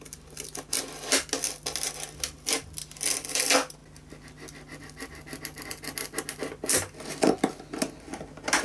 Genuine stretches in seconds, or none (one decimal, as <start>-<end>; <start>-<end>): 0.0-8.6